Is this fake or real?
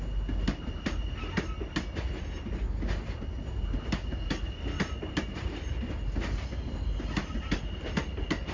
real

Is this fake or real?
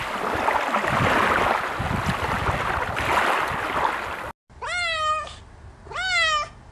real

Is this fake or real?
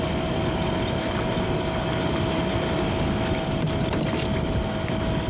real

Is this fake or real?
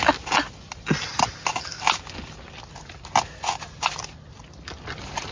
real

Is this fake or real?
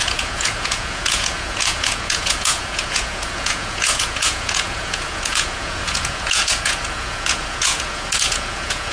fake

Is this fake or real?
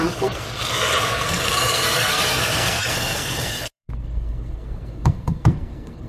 fake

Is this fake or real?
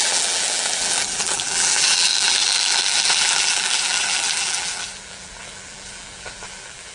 fake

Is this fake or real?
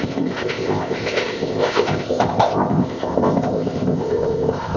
fake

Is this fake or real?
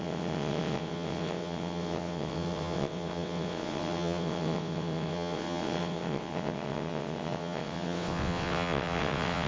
fake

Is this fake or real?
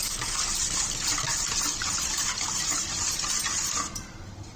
fake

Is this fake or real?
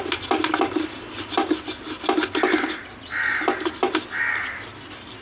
real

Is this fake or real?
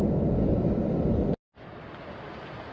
real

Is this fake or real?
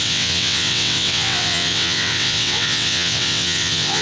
fake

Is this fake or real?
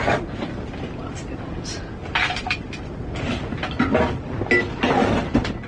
real